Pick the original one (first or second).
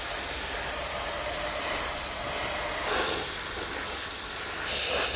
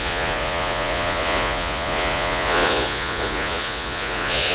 first